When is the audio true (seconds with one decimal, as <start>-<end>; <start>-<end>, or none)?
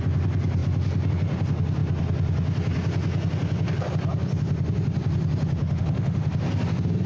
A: 0.0-5.6; 6.3-7.1